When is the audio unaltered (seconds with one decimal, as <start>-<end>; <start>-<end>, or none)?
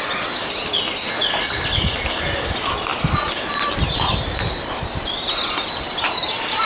0.0-6.7